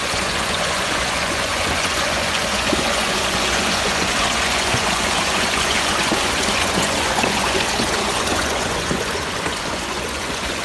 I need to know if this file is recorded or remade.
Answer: remade